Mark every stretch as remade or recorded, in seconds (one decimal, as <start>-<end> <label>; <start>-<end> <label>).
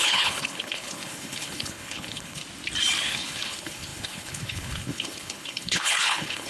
0.0-2.4 remade; 2.4-3.0 recorded; 3.0-6.5 remade